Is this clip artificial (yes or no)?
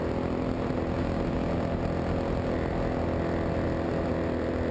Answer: no